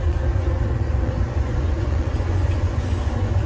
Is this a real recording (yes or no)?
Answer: no